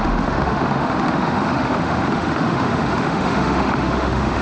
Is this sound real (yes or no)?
no